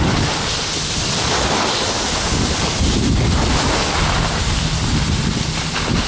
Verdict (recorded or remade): recorded